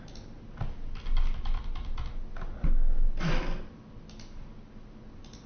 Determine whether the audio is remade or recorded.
recorded